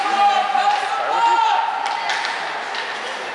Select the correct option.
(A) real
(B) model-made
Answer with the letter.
A